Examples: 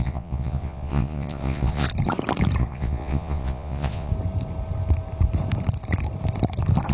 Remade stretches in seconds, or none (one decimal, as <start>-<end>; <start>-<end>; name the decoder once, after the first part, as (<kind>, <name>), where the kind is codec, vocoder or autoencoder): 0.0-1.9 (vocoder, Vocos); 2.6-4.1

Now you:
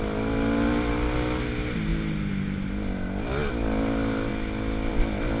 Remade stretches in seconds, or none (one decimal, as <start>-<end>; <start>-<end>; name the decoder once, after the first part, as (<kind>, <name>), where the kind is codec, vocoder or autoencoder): none

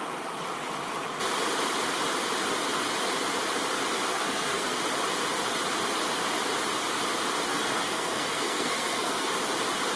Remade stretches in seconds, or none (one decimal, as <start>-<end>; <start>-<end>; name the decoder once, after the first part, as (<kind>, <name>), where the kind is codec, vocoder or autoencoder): 4.1-4.8 (codec, SNAC); 7.5-9.3

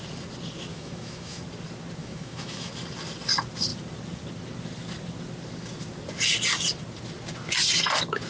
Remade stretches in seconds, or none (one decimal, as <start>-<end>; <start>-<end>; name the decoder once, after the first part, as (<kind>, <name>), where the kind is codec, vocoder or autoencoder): 0.7-1.4 (autoencoder, DAC-VAE); 2.0-2.7

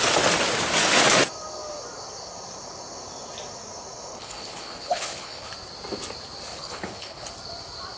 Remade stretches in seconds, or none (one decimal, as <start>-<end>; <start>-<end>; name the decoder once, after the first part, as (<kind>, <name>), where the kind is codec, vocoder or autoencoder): 4.1-5.5 (codec, HILCodec); 6.5-7.3

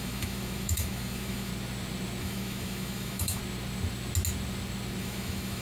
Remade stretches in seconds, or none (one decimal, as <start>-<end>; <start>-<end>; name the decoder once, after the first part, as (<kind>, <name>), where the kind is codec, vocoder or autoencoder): 0.0-1.5 (autoencoder, DAC-VAE); 2.2-3.4; 5.0-5.6

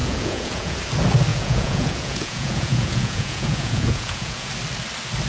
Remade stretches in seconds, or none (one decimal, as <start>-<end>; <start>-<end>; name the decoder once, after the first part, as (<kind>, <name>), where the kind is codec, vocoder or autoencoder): 0.0-0.8 (vocoder, Vocos); 1.3-4.5